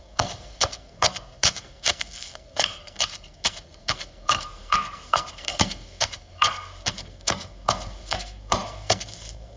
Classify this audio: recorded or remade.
remade